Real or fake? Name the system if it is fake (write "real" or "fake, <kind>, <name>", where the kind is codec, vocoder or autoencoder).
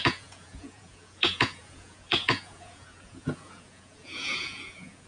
fake, vocoder, Vocos